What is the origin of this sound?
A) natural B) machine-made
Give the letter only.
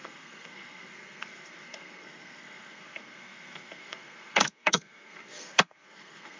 B